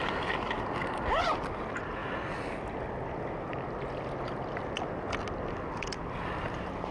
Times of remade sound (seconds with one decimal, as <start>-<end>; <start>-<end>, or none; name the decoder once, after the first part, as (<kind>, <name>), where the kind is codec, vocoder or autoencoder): none